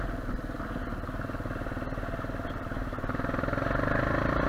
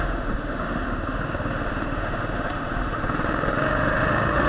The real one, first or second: first